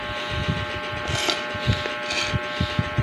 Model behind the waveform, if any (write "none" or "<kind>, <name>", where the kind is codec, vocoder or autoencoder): none